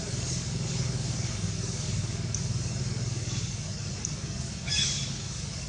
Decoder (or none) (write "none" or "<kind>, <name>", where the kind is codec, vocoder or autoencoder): codec, DAC